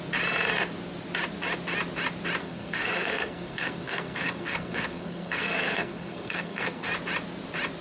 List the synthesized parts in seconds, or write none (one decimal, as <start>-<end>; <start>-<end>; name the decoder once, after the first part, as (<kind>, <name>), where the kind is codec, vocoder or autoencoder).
2.4-6.9 (codec, SNAC)